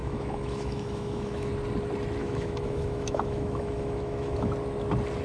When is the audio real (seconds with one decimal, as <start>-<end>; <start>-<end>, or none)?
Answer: 1.5-2.2; 4.5-5.2